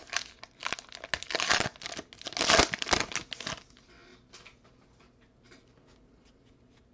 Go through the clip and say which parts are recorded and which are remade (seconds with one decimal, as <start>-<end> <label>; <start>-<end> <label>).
0.0-6.9 recorded